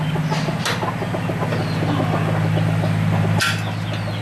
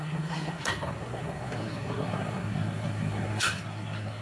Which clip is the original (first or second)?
first